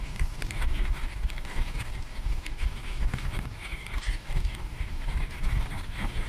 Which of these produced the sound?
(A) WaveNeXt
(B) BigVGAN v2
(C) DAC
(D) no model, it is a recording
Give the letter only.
C